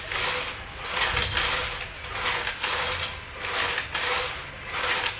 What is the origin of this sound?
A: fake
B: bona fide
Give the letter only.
B